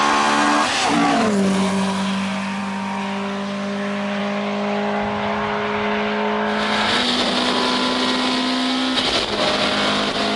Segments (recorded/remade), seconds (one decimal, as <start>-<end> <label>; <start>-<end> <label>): 0.0-10.4 recorded